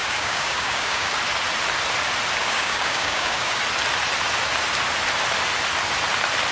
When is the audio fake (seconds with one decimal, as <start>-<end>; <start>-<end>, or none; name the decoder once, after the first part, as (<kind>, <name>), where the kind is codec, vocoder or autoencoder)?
0.0-1.1 (codec, DAC); 2.4-3.6